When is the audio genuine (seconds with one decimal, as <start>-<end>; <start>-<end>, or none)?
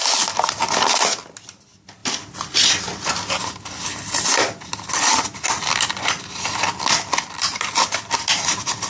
0.0-8.9